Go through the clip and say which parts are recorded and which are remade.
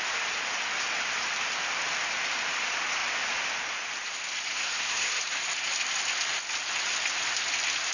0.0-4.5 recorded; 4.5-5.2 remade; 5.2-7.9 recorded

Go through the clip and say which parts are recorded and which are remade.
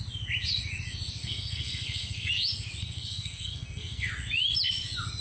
0.0-1.2 recorded; 1.2-2.3 remade; 2.3-2.8 recorded; 2.8-4.1 remade; 4.1-5.2 recorded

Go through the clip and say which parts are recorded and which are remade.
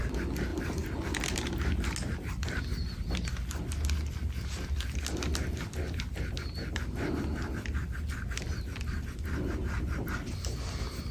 0.0-11.1 recorded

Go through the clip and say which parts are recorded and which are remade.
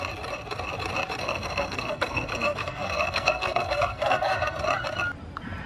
0.0-1.2 recorded; 1.2-4.6 remade; 4.6-5.7 recorded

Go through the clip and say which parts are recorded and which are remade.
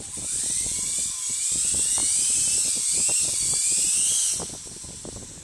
0.0-5.4 recorded